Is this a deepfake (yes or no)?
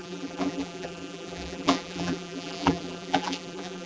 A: yes